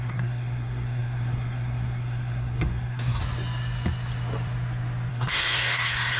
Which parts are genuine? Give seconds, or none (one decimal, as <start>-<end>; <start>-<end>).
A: 3.2-5.1